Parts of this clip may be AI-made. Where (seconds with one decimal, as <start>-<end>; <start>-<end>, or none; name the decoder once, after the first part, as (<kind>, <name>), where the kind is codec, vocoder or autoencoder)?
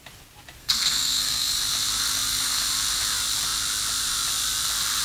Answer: 0.6-1.5 (codec, SNAC)